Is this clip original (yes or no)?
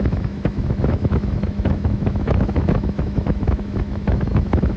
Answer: no